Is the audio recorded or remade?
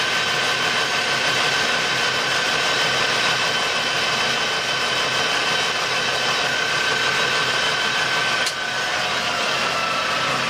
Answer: recorded